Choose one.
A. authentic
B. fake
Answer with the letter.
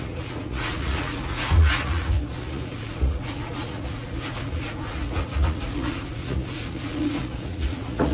B